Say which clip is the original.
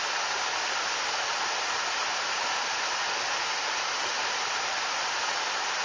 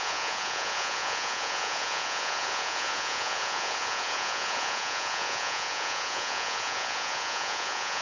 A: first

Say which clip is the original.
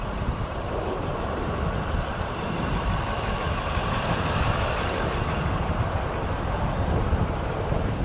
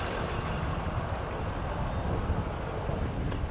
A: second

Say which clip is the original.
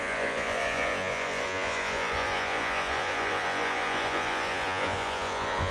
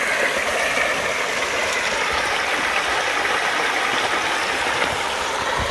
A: second